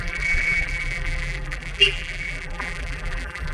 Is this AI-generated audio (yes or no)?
yes